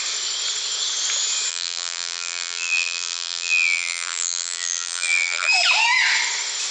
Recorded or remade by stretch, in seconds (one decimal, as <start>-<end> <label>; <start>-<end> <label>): 0.0-1.5 recorded; 1.5-5.5 remade; 5.5-6.7 recorded